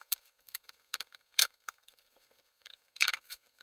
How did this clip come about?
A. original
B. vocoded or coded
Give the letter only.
B